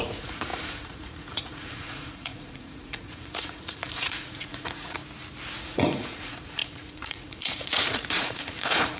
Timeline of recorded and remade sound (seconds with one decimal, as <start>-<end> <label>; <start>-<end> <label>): 0.0-5.0 remade; 5.0-5.6 recorded; 5.6-9.0 remade

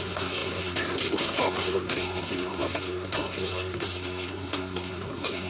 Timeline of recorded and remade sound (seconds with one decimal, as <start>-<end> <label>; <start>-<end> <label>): 0.0-5.5 remade